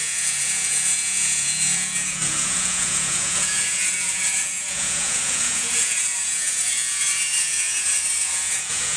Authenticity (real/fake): fake